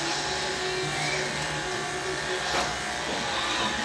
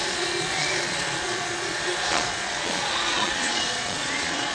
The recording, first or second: first